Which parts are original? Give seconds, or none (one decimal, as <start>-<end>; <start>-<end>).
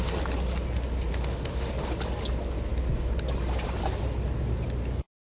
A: 0.0-1.1; 1.7-5.3